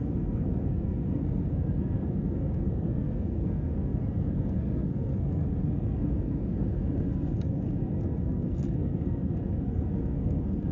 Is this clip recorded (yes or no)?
no